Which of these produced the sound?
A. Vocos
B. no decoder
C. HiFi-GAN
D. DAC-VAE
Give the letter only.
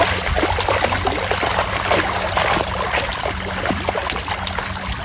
B